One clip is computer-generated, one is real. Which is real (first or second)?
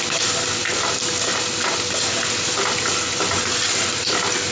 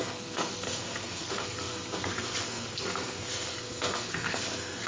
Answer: first